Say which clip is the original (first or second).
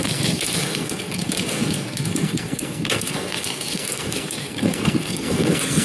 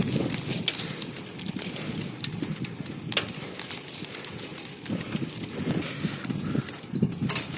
second